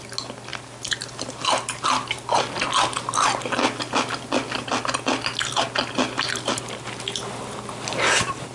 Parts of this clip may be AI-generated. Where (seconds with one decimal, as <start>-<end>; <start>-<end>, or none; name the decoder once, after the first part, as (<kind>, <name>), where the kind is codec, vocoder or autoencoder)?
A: none